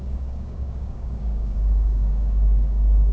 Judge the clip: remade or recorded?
remade